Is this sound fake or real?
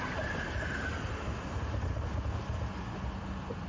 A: real